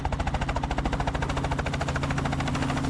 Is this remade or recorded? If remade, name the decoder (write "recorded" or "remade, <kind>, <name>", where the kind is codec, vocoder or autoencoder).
recorded